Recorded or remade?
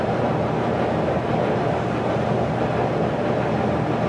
recorded